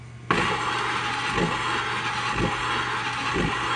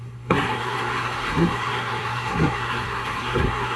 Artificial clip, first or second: second